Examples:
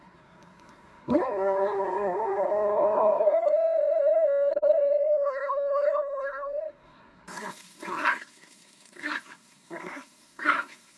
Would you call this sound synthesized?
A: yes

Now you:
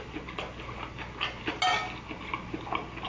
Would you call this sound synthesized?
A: no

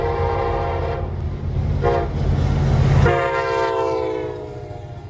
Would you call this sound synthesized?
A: no